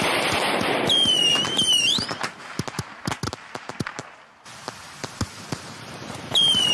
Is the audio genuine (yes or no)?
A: yes